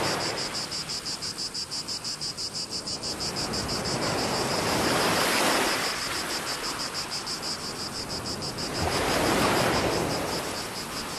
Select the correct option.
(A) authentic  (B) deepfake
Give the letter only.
A